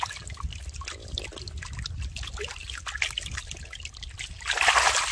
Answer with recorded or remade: recorded